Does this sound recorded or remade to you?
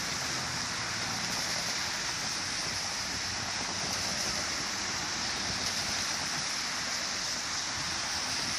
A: recorded